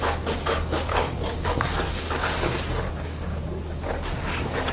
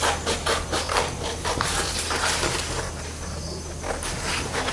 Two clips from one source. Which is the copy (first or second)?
first